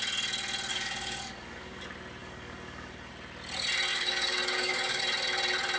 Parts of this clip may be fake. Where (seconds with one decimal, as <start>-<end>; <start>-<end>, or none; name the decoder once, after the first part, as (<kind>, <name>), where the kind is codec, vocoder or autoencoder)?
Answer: 0.7-1.8 (codec, DAC); 2.2-3.1; 3.9-5.0